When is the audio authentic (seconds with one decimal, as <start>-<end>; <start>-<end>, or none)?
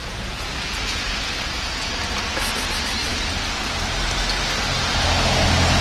1.9-5.8